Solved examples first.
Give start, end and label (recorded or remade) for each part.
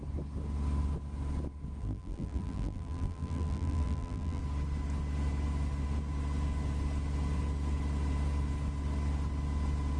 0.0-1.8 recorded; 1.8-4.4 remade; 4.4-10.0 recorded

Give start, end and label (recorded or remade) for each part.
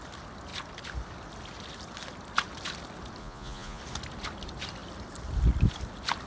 0.0-3.2 recorded; 3.2-3.8 remade; 3.8-6.3 recorded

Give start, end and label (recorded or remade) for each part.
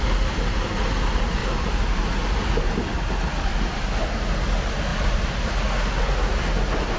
0.0-1.4 recorded; 1.4-2.7 remade; 2.7-3.5 recorded; 3.5-4.1 remade; 4.1-7.0 recorded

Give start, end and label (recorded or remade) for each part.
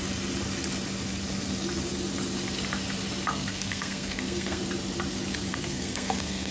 0.0-3.3 recorded; 3.3-4.6 remade; 4.6-5.5 recorded; 5.5-6.5 remade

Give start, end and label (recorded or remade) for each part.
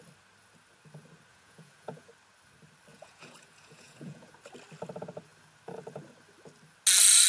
0.0-1.3 recorded; 1.3-2.1 remade; 2.1-2.9 recorded; 2.9-4.3 remade; 4.3-7.3 recorded